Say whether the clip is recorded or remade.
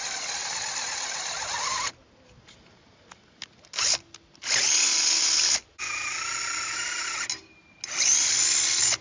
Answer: recorded